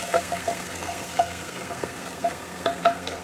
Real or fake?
fake